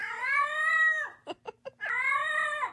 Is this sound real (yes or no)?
yes